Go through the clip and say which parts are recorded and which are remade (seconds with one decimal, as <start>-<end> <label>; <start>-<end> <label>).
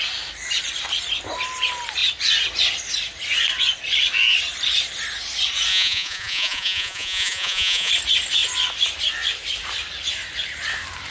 0.0-5.7 recorded; 5.7-7.9 remade; 7.9-11.1 recorded